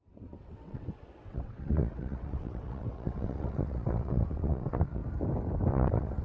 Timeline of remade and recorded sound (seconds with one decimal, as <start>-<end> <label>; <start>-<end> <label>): 0.0-5.0 remade; 5.0-5.7 recorded; 5.7-6.2 remade